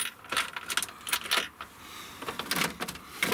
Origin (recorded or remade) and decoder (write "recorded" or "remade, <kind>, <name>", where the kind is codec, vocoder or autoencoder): recorded